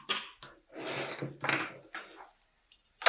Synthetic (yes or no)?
no